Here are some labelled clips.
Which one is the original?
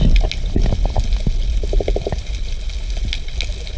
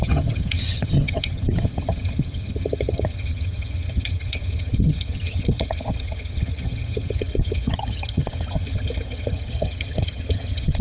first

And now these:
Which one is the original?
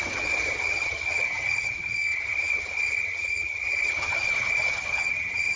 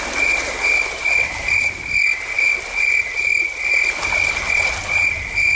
second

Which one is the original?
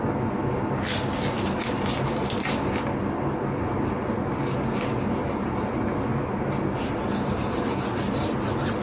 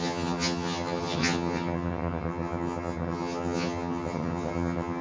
first